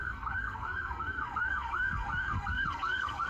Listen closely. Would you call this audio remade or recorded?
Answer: remade